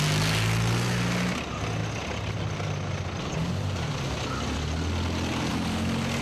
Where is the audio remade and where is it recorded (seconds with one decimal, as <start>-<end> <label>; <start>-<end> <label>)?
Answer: 0.0-6.2 recorded